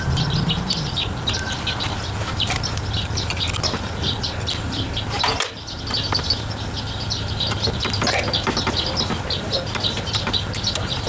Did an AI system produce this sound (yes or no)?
no